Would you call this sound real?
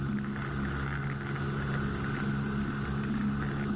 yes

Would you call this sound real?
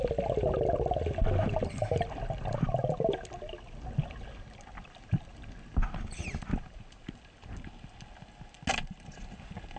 yes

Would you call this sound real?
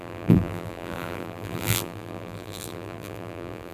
no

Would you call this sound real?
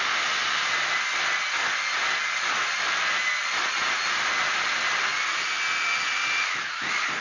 yes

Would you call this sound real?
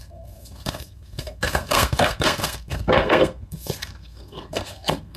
no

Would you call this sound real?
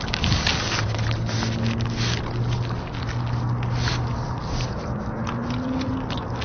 yes